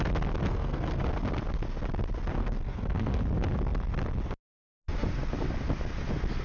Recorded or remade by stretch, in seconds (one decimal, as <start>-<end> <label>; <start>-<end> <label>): 0.0-0.4 recorded; 0.4-1.1 remade; 1.1-2.4 recorded; 2.4-3.2 remade; 3.2-6.4 recorded